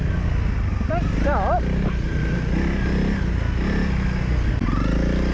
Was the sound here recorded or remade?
recorded